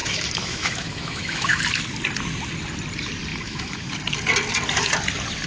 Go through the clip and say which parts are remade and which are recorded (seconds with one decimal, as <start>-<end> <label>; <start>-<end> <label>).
0.0-1.6 remade; 1.6-3.3 recorded; 3.3-3.9 remade; 3.9-5.5 recorded